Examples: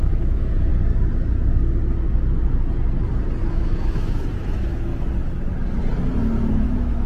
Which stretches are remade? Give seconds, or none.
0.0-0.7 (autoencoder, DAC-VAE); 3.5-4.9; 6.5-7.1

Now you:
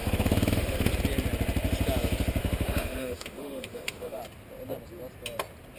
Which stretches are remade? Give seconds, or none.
0.0-0.9 (autoencoder, DAC-VAE); 2.4-4.2